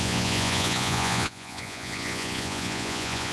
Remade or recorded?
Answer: remade